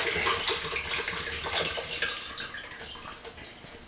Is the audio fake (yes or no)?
no